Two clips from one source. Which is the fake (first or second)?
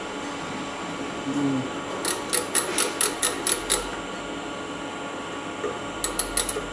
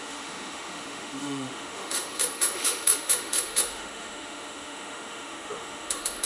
second